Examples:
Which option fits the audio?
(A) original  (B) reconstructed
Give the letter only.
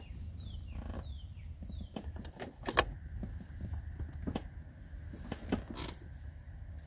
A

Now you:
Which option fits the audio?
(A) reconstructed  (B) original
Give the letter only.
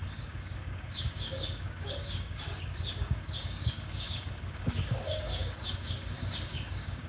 A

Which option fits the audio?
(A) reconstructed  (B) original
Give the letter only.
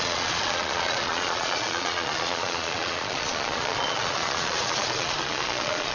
A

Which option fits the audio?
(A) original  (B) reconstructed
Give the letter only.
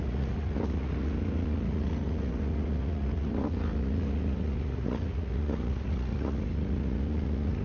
B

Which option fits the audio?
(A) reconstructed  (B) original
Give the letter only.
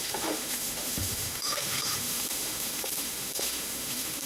A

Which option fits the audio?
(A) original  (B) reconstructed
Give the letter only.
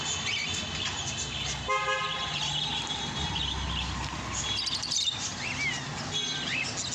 A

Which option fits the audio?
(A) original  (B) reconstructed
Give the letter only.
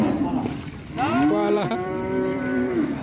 B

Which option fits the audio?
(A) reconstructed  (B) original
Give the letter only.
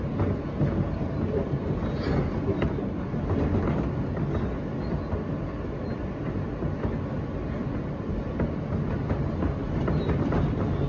B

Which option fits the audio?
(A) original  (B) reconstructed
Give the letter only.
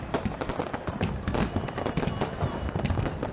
A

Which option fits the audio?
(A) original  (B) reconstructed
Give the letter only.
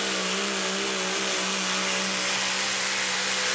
A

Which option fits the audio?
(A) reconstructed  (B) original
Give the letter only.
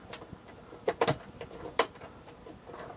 B